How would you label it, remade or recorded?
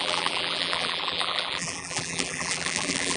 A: remade